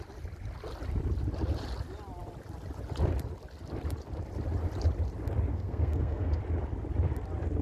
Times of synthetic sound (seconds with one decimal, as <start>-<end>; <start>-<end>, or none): 5.5-6.4